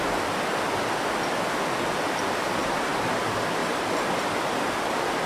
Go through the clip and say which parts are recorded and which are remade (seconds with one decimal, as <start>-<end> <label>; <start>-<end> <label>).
0.0-2.6 recorded; 2.6-3.1 remade; 3.1-5.3 recorded